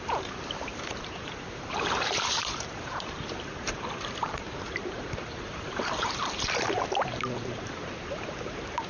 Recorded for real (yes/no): no